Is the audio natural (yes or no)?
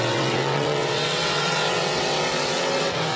no